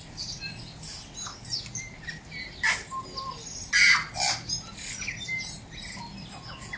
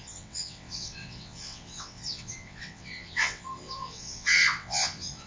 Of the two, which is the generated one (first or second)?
second